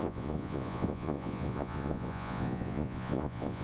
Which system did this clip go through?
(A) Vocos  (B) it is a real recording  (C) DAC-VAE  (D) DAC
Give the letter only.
A